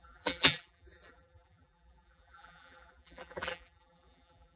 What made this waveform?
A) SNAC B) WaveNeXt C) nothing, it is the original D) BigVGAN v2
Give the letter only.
D